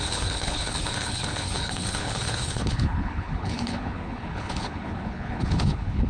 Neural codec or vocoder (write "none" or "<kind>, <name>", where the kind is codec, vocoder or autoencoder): codec, HILCodec